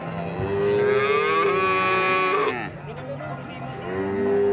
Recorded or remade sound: recorded